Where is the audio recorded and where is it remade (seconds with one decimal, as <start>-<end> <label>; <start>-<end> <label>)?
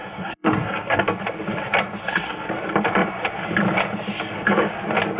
0.0-1.0 remade; 1.0-2.0 recorded; 2.0-2.5 remade; 2.5-5.2 recorded